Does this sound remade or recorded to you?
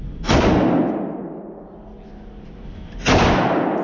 recorded